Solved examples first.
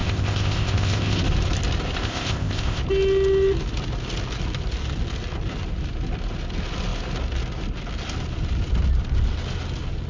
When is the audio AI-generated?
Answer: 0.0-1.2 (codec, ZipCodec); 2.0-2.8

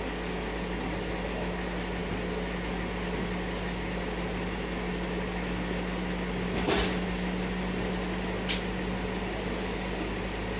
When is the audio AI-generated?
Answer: none